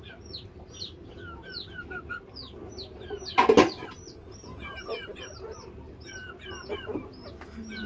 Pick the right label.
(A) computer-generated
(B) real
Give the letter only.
B